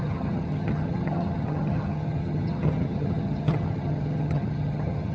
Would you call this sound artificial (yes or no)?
yes